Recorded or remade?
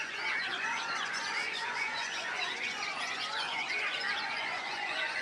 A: remade